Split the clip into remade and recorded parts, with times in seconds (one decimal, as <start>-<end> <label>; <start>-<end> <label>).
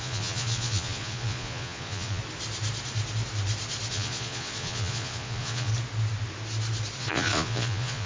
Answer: 0.0-2.2 remade; 2.2-3.9 recorded; 3.9-5.7 remade; 5.7-7.0 recorded; 7.0-8.1 remade